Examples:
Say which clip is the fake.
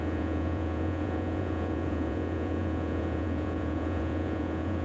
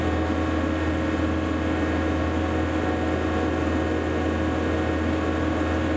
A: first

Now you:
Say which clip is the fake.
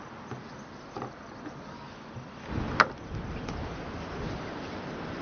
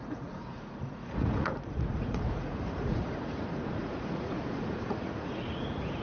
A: second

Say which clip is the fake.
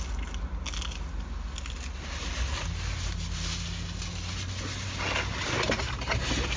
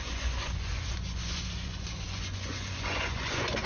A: second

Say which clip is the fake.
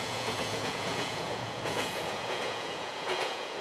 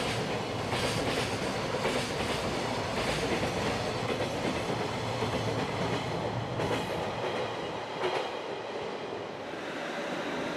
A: first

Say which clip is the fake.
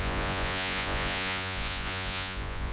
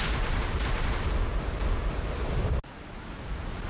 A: first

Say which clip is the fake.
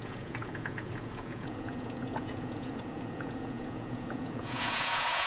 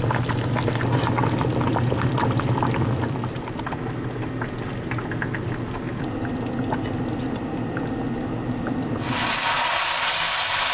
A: first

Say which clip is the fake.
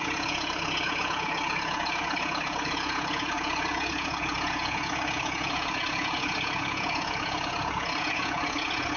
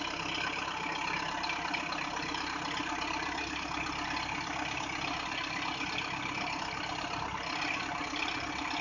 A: first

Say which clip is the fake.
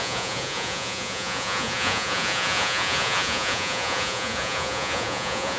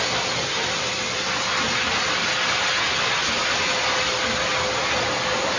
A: first